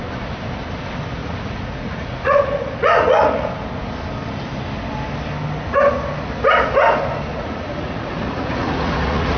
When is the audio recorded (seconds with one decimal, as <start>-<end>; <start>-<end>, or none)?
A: 0.0-1.2; 3.5-7.3